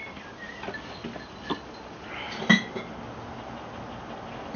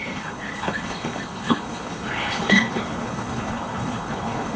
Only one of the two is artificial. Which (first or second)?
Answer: second